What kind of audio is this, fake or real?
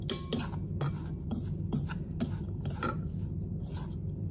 real